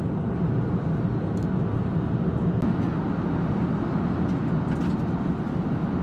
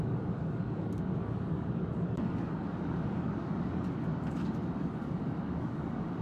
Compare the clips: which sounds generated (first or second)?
second